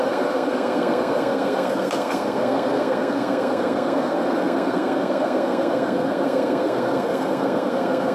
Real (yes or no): no